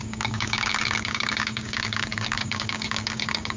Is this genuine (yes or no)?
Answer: no